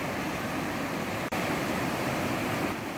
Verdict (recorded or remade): recorded